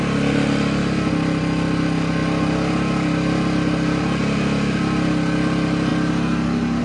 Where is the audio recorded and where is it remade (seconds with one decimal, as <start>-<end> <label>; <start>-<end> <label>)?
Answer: 0.0-6.8 recorded